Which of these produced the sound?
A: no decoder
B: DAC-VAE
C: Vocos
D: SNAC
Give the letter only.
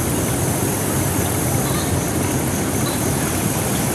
A